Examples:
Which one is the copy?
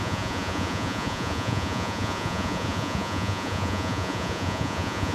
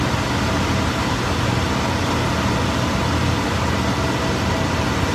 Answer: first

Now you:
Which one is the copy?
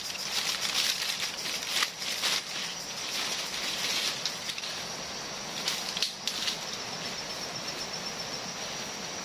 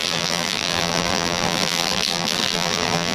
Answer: second